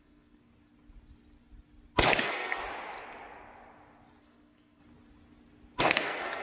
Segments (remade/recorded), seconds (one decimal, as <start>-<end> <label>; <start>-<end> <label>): 0.0-0.5 remade; 0.5-2.2 recorded; 2.2-2.6 remade; 2.6-4.2 recorded; 4.2-4.8 remade; 4.8-5.8 recorded; 5.8-6.4 remade